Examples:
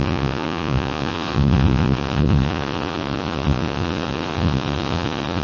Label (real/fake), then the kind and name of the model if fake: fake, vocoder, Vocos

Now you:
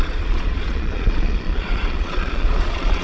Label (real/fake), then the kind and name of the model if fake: fake, vocoder, Vocos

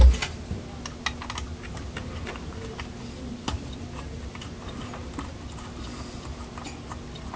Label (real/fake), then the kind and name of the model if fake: real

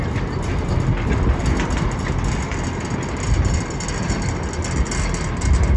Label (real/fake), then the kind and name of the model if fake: real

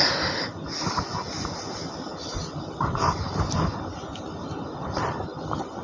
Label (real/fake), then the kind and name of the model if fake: real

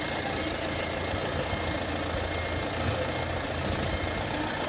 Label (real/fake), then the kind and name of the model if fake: real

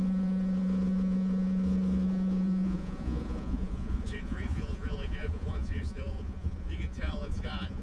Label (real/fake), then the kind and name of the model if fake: fake, vocoder, Vocos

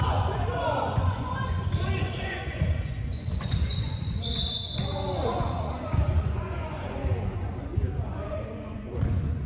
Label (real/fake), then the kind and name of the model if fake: fake, vocoder, Vocos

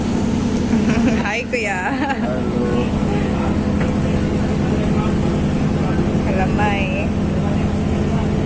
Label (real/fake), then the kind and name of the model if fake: real